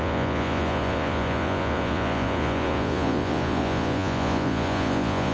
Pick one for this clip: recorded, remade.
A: remade